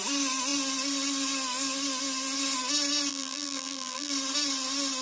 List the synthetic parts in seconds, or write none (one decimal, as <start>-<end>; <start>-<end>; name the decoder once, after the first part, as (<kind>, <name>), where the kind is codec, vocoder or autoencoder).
3.1-4.1 (vocoder, BigVGAN v2)